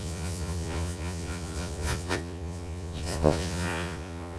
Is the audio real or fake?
fake